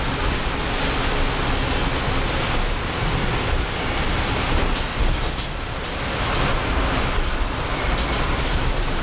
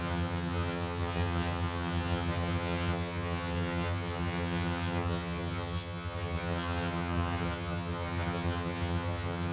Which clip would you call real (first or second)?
first